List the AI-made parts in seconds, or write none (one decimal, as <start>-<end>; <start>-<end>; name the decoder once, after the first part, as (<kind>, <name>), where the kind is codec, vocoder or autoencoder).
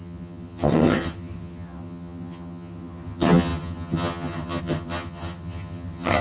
0.0-6.2 (vocoder, HiFi-GAN)